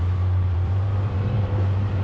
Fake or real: fake